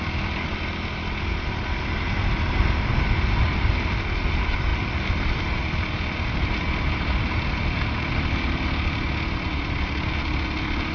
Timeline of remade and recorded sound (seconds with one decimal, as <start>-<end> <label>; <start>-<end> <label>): 0.0-10.9 recorded

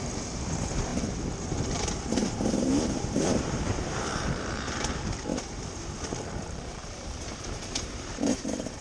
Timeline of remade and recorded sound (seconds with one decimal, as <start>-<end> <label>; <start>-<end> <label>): 0.0-8.8 remade